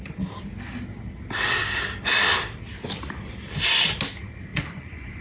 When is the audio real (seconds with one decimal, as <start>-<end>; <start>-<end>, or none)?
0.0-4.5